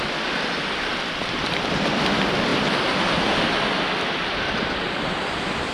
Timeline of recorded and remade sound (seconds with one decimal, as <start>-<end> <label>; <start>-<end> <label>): 0.0-5.7 recorded